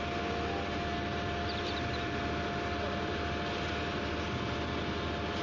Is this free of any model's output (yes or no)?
yes